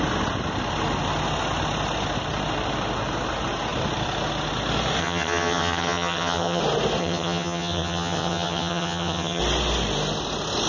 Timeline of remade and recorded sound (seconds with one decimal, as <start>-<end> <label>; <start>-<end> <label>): 0.0-5.0 recorded; 5.0-6.6 remade; 6.6-7.0 recorded; 7.0-9.4 remade; 9.4-10.7 recorded